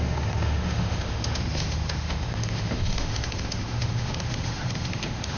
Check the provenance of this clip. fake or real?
fake